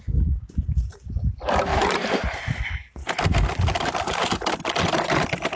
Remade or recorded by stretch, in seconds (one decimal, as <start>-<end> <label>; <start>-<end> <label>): 0.0-1.7 recorded; 1.7-2.4 remade; 2.4-5.6 recorded